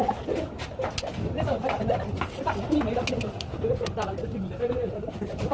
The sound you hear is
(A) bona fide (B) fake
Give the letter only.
A